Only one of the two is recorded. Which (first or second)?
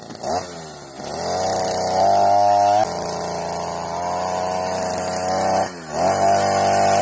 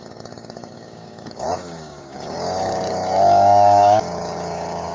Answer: first